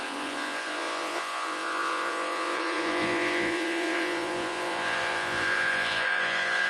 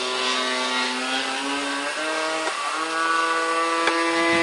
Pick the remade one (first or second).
first